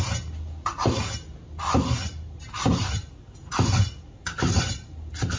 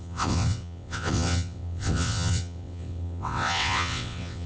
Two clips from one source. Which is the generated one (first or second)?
second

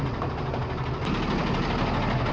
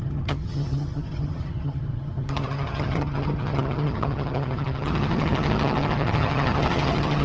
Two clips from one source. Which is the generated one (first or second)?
second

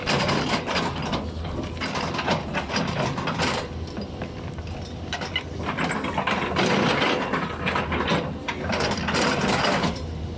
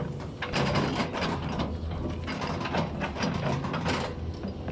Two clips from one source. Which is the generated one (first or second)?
first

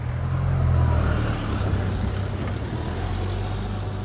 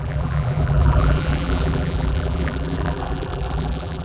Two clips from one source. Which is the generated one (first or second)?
second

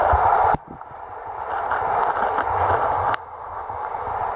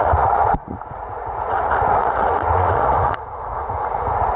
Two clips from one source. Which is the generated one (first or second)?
second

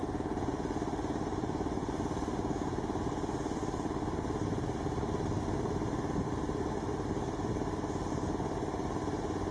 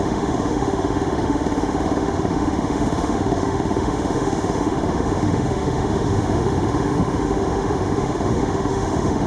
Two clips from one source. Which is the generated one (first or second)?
second